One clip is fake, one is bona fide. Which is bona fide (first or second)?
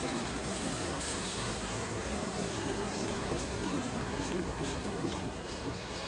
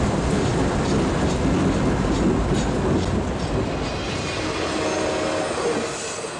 second